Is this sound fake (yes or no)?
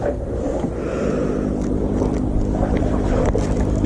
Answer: no